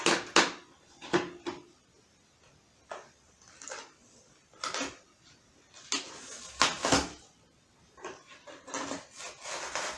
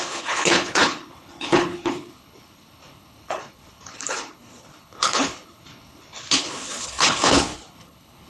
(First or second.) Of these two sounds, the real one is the first